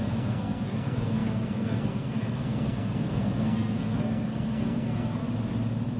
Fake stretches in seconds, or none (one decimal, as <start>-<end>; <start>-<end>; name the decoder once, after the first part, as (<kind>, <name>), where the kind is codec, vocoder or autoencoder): 0.0-5.2 (codec, SNAC)